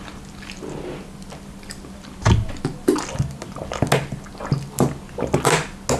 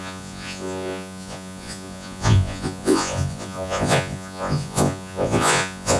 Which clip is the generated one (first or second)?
second